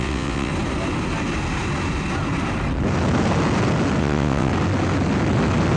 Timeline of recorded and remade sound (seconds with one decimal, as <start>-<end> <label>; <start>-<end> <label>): 0.0-0.5 remade; 0.5-4.0 recorded; 4.0-4.5 remade; 4.5-5.8 recorded